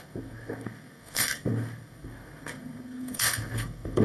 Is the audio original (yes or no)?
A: no